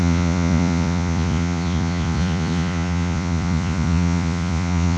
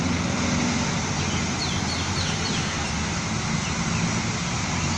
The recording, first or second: second